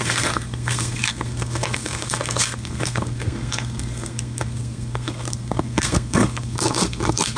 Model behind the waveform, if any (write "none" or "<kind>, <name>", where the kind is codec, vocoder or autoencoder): codec, SNAC